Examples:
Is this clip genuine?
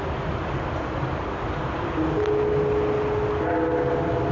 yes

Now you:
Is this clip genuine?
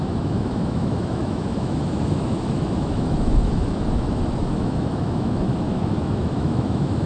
no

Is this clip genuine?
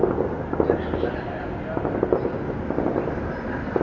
yes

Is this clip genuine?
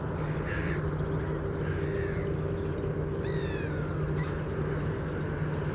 yes